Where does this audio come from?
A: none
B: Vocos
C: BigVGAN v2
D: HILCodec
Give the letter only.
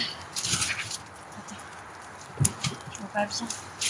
A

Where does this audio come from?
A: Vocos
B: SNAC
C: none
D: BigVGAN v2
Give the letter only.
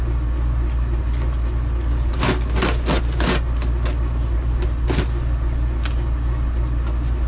C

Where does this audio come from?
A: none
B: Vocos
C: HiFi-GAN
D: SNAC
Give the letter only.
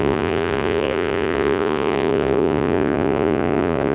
B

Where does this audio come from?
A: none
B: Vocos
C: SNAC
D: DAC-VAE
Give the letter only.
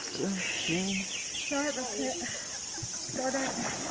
A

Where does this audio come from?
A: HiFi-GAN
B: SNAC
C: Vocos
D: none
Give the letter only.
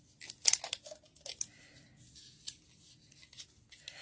D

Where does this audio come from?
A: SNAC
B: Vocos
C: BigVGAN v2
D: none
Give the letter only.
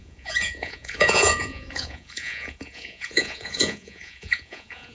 B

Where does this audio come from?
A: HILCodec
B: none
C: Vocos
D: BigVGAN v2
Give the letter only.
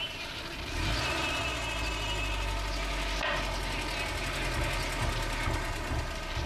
B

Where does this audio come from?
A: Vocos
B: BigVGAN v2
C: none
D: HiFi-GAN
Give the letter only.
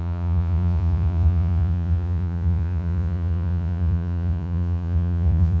A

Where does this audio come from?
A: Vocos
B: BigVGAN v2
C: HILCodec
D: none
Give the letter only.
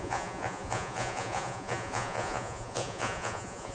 A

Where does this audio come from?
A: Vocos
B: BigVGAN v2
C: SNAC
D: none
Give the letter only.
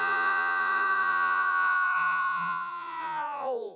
A